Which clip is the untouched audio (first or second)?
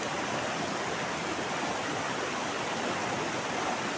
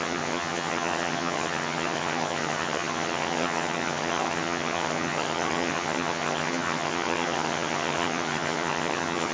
first